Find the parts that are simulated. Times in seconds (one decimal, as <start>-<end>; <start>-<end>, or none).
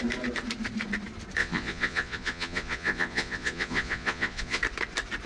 1.4-4.6